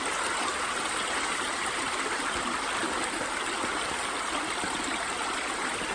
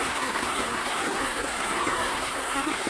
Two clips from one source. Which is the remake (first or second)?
second